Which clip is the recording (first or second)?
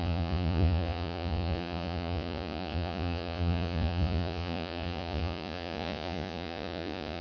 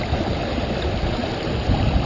second